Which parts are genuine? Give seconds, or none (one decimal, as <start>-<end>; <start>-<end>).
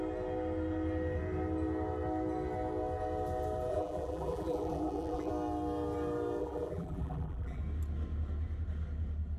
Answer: 0.0-3.7; 5.3-6.4; 7.6-9.4